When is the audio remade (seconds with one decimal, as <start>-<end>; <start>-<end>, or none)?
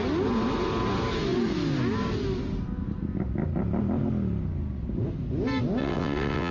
5.8-6.5